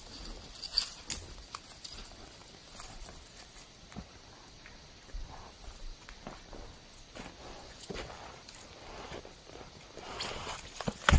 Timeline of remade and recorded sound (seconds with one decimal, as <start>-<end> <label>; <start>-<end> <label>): 0.0-7.4 recorded; 7.4-7.9 remade; 7.9-11.2 recorded